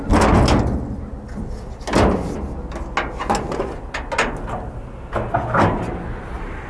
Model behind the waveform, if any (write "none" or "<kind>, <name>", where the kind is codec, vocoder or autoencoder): none